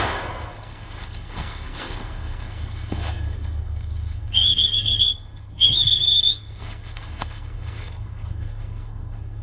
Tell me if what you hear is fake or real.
fake